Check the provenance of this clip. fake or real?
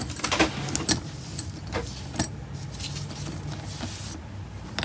real